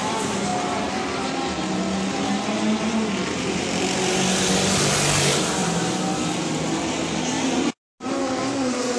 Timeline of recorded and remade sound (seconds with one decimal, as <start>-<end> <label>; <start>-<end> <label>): 0.0-8.2 recorded; 8.2-9.0 remade